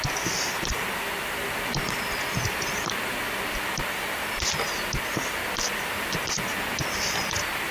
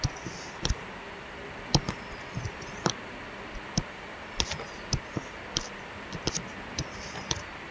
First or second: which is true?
first